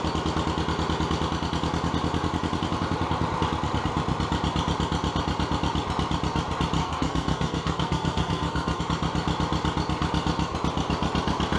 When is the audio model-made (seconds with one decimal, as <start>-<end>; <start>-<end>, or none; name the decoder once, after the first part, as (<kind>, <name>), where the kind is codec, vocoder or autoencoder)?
6.8-8.8 (codec, SNAC)